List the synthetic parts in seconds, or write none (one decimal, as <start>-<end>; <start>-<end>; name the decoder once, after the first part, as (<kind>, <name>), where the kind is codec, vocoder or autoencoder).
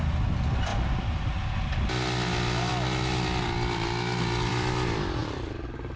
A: none